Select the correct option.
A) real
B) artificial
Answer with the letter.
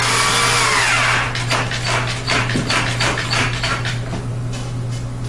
A